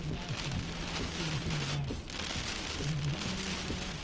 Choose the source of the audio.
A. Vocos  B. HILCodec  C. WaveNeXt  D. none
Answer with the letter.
D